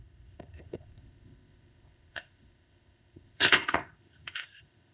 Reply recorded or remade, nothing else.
remade